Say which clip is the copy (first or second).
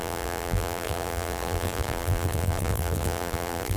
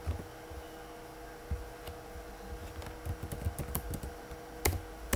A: first